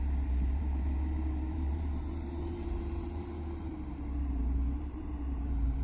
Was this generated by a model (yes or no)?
yes